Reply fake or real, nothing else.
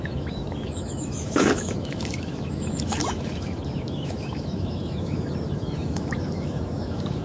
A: fake